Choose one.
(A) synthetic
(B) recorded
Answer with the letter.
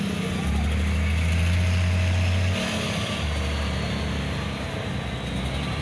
B